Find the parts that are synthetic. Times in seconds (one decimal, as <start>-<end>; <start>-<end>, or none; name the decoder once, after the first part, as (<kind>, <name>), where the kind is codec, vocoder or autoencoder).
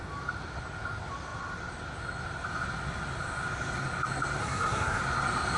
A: 4.4-5.0 (codec, SNAC)